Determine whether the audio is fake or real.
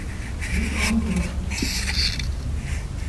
real